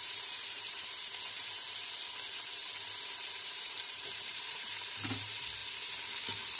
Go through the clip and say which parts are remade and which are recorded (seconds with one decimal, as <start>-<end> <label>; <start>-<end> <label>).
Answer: 0.0-2.6 remade; 2.6-3.2 recorded; 3.2-5.6 remade; 5.6-6.6 recorded